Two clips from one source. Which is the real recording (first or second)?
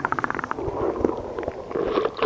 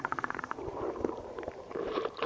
first